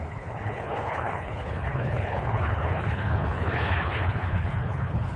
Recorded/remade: remade